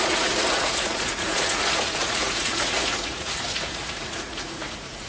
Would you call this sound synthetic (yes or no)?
yes